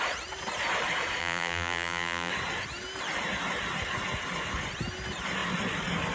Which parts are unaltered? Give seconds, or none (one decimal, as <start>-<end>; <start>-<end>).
0.0-1.2; 2.3-6.1